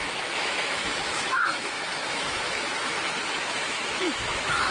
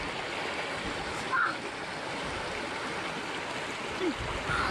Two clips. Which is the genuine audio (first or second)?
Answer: second